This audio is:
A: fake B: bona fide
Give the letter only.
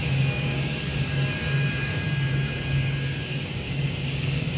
A